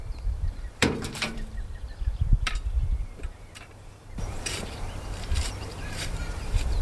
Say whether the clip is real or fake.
fake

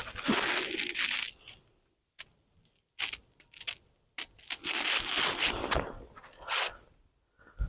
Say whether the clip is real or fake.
real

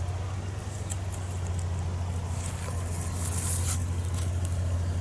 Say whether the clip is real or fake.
real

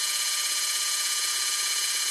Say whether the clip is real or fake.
fake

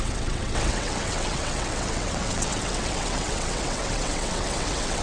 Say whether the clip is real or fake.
fake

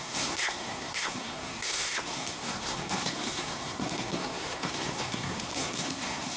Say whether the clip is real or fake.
fake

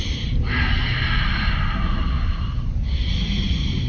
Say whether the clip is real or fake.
real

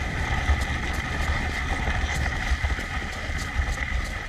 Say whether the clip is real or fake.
real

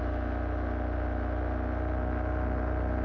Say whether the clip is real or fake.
real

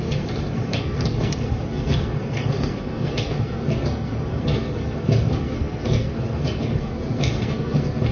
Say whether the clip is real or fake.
fake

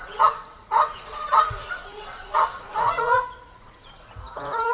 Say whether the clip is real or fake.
fake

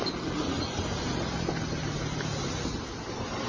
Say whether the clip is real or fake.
fake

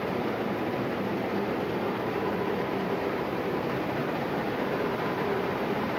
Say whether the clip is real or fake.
fake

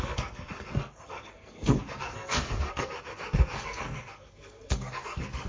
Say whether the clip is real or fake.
fake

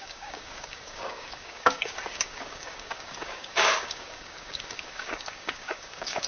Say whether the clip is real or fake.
fake